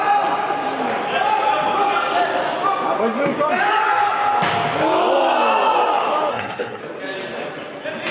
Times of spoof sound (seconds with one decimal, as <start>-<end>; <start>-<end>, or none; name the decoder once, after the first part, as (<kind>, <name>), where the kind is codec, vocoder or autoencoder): 6.3-6.8 (codec, SNAC)